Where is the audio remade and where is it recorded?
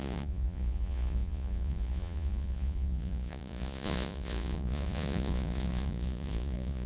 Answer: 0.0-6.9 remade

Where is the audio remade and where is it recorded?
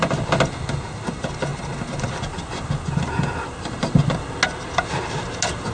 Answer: 0.0-5.7 recorded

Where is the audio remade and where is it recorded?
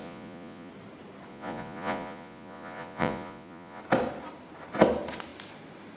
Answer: 0.0-0.7 remade; 0.7-1.3 recorded; 1.3-3.8 remade; 3.8-6.0 recorded